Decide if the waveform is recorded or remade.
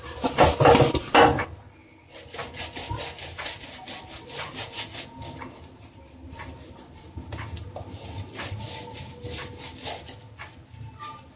recorded